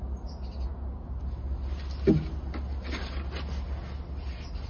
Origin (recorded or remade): recorded